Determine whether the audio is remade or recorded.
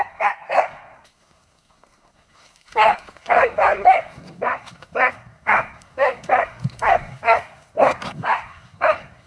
remade